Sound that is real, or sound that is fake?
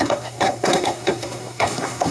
fake